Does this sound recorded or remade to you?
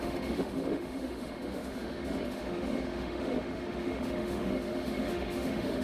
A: remade